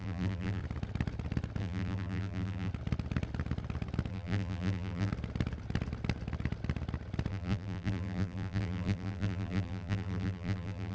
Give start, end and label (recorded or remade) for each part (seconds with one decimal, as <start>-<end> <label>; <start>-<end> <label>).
0.0-0.6 remade; 0.6-1.6 recorded; 1.6-2.7 remade; 2.7-4.1 recorded; 4.1-5.1 remade; 5.1-7.3 recorded; 7.3-10.9 remade